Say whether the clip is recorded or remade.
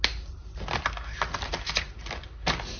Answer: recorded